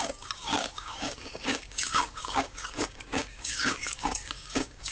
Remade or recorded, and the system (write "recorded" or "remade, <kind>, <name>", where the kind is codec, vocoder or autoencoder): remade, codec, DAC